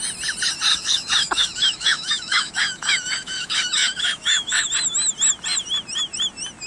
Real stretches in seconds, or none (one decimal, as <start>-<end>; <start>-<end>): 0.0-0.7; 4.7-6.7